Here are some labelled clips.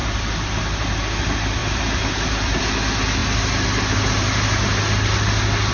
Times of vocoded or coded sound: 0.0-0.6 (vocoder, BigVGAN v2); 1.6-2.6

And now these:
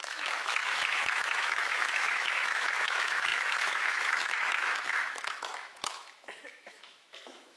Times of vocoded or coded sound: 0.0-7.6 (autoencoder, DAC-VAE)

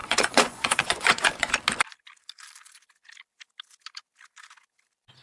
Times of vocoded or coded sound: 0.0-1.5 (vocoder, Vocos)

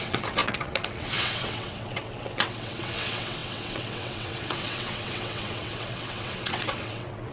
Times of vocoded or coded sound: 0.0-7.3 (vocoder, WaveNeXt)

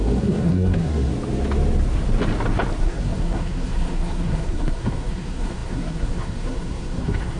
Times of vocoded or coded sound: 0.0-1.1 (codec, SNAC); 2.8-7.4

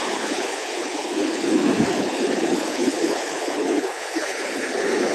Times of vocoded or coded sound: 0.0-5.1 (codec, HILCodec)